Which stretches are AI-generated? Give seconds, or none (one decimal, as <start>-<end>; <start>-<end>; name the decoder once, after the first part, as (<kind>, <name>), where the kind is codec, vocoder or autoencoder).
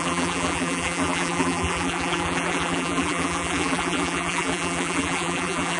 0.0-5.8 (vocoder, BigVGAN v2)